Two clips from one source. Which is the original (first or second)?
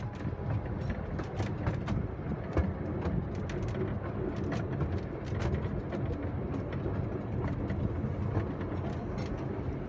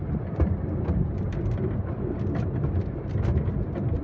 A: first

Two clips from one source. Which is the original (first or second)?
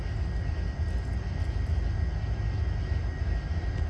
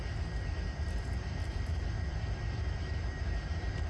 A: first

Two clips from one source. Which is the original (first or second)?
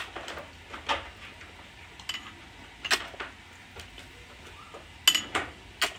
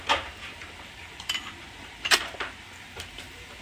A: first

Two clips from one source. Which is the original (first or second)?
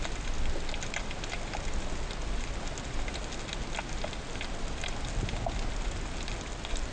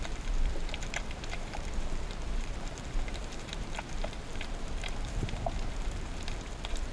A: first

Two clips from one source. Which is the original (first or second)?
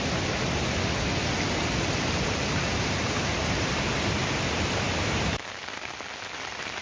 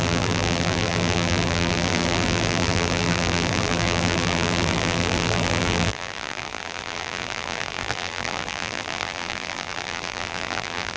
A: first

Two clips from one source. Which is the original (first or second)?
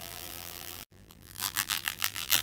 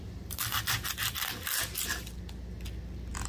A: second